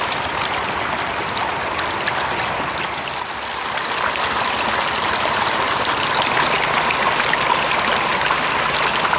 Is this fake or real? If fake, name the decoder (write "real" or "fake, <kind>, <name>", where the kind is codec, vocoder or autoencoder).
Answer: real